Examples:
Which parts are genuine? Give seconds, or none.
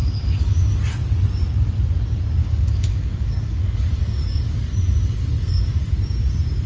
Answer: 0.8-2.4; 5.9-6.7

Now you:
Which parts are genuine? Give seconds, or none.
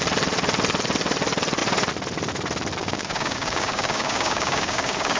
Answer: 0.0-2.8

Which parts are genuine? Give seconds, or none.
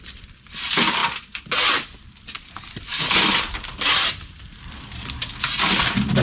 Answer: 0.0-6.2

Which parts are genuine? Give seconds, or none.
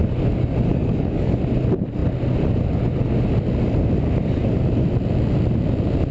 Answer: 0.0-0.7; 1.4-6.1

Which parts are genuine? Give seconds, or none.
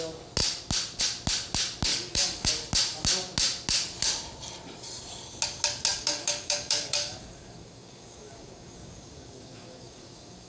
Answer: 0.0-1.9; 2.5-5.9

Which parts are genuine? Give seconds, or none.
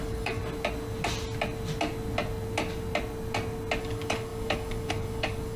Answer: 0.4-3.8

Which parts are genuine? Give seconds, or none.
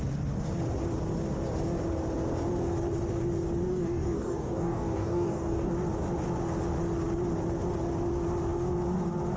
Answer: 0.0-3.7; 5.7-9.4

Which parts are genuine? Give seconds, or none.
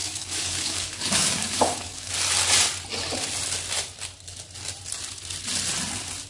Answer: 2.1-6.3